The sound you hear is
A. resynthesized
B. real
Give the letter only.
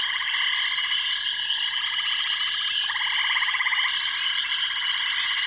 B